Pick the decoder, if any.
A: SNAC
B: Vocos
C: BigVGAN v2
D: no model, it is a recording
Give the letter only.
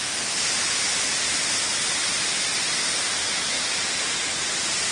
D